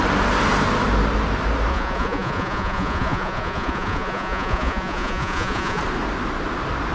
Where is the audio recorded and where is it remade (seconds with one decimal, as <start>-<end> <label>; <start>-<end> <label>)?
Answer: 0.0-1.7 recorded; 1.7-5.8 remade; 5.8-6.9 recorded

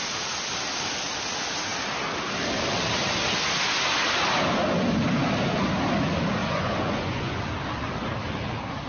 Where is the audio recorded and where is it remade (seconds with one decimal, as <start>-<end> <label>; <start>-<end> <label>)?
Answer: 0.0-6.4 recorded; 6.4-7.4 remade; 7.4-8.9 recorded

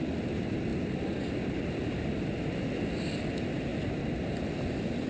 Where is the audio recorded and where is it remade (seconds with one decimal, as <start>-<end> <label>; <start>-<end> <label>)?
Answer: 0.0-3.7 remade; 3.7-4.5 recorded; 4.5-5.1 remade

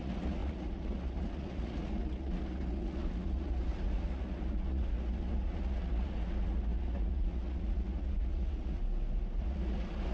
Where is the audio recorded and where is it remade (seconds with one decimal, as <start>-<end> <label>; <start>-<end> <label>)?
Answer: 0.0-8.8 remade; 8.8-9.4 recorded; 9.4-10.1 remade